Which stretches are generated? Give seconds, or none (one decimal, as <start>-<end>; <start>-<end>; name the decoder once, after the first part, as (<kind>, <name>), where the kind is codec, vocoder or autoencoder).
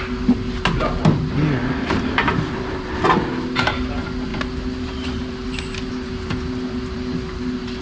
none